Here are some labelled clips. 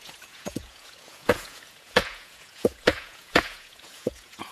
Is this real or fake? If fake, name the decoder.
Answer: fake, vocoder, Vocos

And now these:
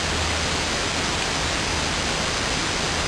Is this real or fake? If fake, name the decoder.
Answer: real